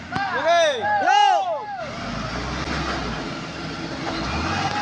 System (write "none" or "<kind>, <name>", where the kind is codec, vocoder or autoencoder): none